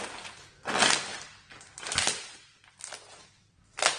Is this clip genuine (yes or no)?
yes